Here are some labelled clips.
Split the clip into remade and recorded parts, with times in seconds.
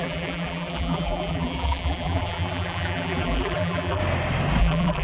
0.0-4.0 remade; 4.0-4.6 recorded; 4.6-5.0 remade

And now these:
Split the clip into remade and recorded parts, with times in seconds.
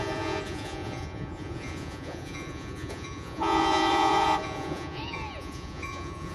0.0-6.3 remade